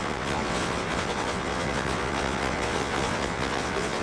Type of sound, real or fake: fake